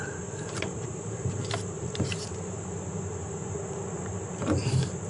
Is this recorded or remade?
remade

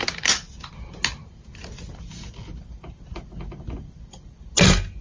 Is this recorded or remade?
recorded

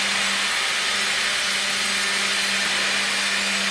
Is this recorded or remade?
recorded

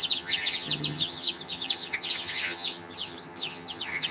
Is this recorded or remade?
remade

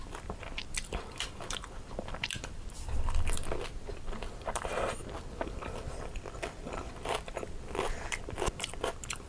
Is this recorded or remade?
remade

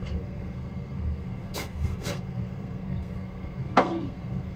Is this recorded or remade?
remade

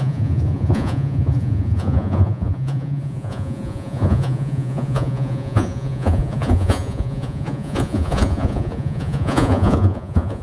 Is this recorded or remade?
remade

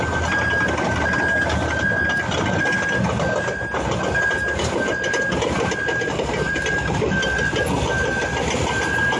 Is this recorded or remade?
recorded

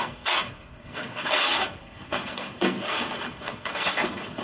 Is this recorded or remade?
remade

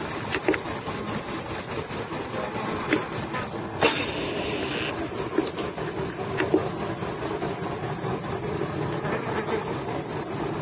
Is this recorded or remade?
recorded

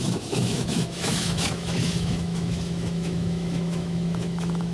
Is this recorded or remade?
remade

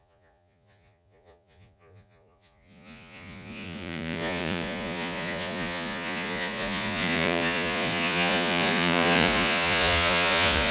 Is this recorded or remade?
remade